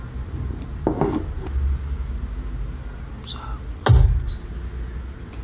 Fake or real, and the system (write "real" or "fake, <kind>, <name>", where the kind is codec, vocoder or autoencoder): real